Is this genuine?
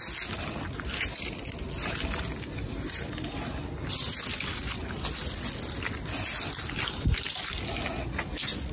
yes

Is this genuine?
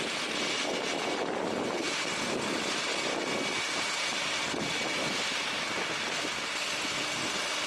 yes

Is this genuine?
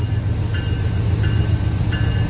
yes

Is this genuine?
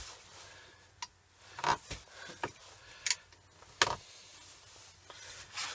yes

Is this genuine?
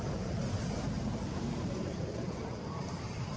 no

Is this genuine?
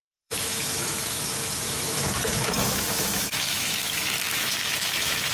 no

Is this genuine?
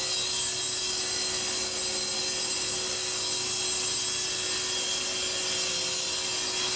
yes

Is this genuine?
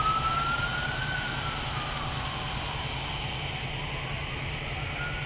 yes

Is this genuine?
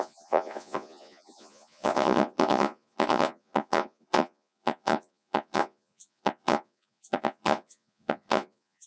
no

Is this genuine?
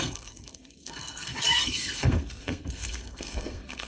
no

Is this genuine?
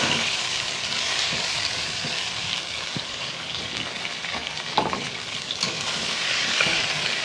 no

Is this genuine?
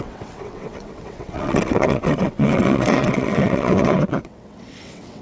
no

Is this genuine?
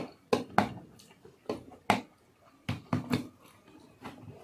yes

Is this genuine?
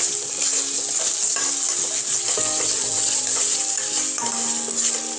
yes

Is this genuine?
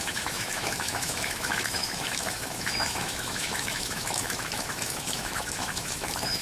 no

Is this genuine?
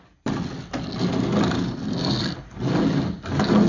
yes